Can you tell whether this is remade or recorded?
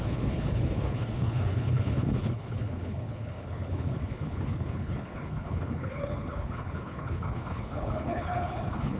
remade